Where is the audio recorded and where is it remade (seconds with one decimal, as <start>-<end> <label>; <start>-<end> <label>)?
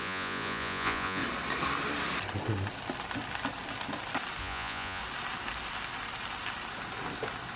0.0-1.2 remade; 1.2-4.4 recorded; 4.4-5.0 remade; 5.0-7.6 recorded